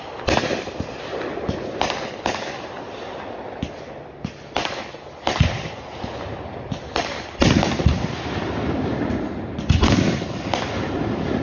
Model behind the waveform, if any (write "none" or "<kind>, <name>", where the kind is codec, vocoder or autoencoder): none